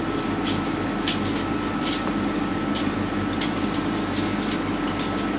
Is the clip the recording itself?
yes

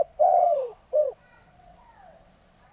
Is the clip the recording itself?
no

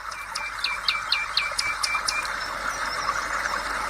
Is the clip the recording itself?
yes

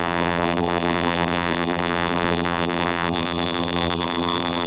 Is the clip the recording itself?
no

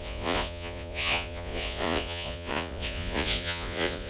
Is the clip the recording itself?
no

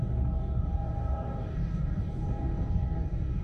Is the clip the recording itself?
no